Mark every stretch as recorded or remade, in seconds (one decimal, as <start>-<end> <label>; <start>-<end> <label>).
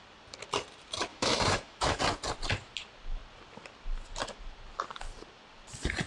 0.0-1.1 recorded; 1.1-2.0 remade; 2.0-6.1 recorded